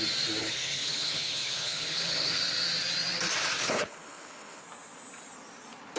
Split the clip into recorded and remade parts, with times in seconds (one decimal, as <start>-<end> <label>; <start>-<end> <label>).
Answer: 0.0-0.4 recorded; 0.4-2.4 remade; 2.4-3.6 recorded; 3.6-4.6 remade; 4.6-6.0 recorded

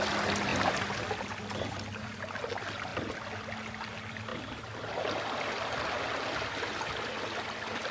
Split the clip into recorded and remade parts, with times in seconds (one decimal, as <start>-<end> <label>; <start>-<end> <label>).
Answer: 0.0-7.9 recorded

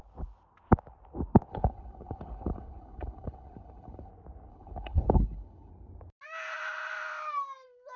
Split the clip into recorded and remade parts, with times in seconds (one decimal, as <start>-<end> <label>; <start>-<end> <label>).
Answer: 0.0-1.5 recorded; 1.5-4.1 remade; 4.1-4.5 recorded; 4.5-5.7 remade; 5.7-8.0 recorded

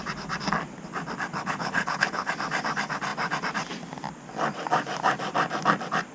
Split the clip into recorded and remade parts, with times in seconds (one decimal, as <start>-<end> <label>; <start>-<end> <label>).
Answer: 0.0-1.3 recorded; 1.3-2.3 remade; 2.3-6.1 recorded